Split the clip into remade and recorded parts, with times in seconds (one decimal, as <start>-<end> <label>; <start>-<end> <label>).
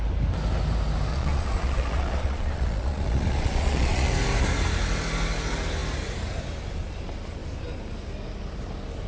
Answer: 0.0-1.1 recorded; 1.1-4.1 remade; 4.1-9.1 recorded